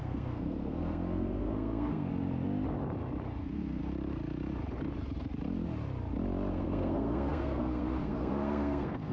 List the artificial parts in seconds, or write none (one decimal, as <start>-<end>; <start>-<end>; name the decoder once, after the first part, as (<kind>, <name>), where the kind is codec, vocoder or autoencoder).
0.0-2.1 (codec, SNAC); 3.4-3.8; 6.5-9.1

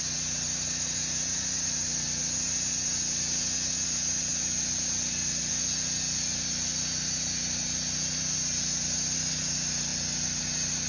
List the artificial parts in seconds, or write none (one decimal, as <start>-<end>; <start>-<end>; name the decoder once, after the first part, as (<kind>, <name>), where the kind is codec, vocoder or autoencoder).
none

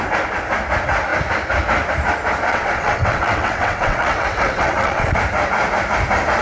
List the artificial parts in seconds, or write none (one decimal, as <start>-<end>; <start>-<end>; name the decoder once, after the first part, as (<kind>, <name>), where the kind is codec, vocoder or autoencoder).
2.5-5.2 (vocoder, WaveNeXt)

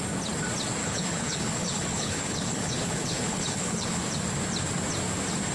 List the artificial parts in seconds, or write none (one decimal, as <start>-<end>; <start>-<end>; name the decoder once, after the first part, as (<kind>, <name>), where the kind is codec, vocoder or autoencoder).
0.8-4.1 (codec, HILCodec)

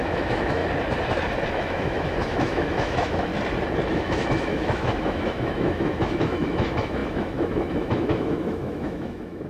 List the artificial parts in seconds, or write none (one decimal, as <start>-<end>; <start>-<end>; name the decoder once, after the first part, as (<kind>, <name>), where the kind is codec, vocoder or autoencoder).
0.0-0.6 (autoencoder, DAC-VAE); 1.5-3.3; 3.9-9.5

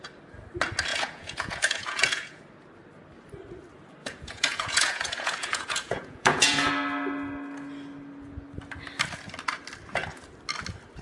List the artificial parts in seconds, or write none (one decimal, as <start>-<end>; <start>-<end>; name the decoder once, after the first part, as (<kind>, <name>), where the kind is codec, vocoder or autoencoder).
0.9-2.4 (vocoder, Vocos); 4.0-6.7

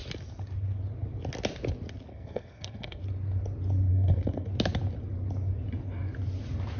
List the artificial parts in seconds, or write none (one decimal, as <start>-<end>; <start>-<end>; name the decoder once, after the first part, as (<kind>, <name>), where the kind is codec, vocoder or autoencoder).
2.1-3.0 (codec, SNAC); 3.9-4.5

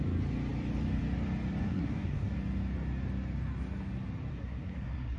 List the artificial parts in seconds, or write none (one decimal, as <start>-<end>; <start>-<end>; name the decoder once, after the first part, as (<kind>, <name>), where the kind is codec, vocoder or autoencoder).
1.6-2.3 (codec, SNAC); 4.3-5.2